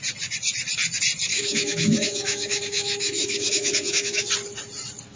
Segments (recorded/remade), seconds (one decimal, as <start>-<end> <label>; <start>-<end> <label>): 0.0-1.3 recorded; 1.3-4.3 remade; 4.3-5.2 recorded